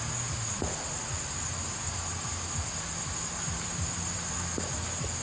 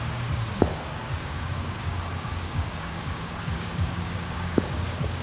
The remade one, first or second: second